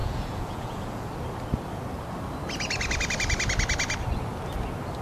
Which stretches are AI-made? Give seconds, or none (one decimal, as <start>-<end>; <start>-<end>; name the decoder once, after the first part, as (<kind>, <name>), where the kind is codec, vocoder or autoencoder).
0.0-1.1 (vocoder, Vocos)